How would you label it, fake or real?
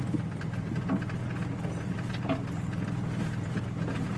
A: real